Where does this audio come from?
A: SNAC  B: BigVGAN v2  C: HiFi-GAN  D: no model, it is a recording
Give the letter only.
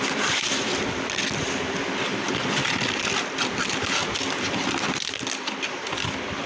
B